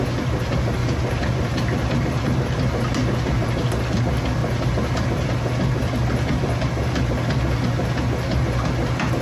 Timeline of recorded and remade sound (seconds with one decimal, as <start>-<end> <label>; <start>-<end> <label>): 0.0-0.8 recorded; 0.8-3.5 remade; 3.5-4.4 recorded; 4.4-5.5 remade; 5.5-9.2 recorded

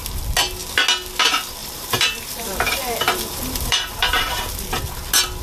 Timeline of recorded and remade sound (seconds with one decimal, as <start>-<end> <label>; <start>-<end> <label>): 0.0-1.6 recorded; 1.6-4.8 remade; 4.8-5.4 recorded

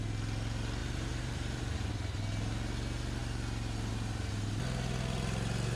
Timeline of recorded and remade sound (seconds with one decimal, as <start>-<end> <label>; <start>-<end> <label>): 0.0-0.8 recorded; 0.8-1.9 remade; 1.9-5.8 recorded

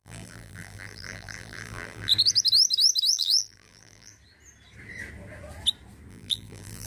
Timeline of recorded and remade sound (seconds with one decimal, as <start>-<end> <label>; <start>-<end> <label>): 0.0-2.1 remade; 2.1-3.1 recorded; 3.1-4.1 remade; 4.1-6.1 recorded; 6.1-6.9 remade

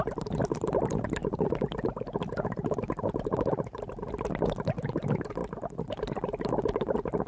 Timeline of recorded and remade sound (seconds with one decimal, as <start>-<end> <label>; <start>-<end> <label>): 0.0-7.3 recorded

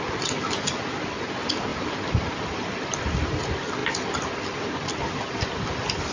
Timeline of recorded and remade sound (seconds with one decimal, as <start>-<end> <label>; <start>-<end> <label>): 0.0-1.7 recorded; 1.7-3.0 remade; 3.0-6.1 recorded

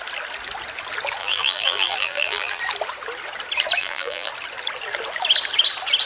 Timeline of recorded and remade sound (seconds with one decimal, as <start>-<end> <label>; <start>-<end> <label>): 0.0-1.2 recorded; 1.2-2.6 remade; 2.6-3.8 recorded; 3.8-4.3 remade; 4.3-6.1 recorded